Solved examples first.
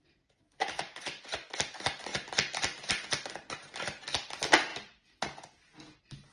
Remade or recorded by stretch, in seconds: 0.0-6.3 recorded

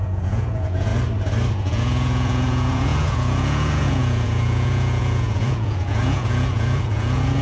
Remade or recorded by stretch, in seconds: 0.0-0.9 remade; 0.9-1.5 recorded; 1.5-7.4 remade

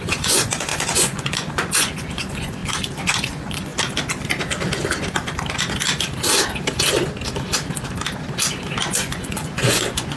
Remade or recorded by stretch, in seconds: 0.0-2.6 remade; 2.6-3.3 recorded; 3.3-3.7 remade; 3.7-8.9 recorded; 8.9-10.2 remade

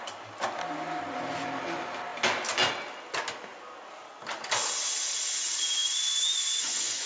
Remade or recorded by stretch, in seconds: 0.0-5.8 recorded; 5.8-7.1 remade

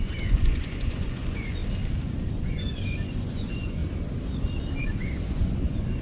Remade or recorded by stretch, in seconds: 0.0-1.6 remade; 1.6-2.3 recorded; 2.3-3.8 remade; 3.8-4.8 recorded; 4.8-6.0 remade